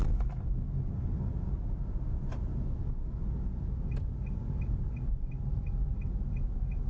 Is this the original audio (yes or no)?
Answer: yes